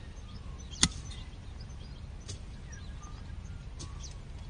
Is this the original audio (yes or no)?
yes